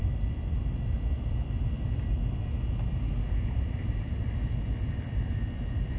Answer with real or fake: real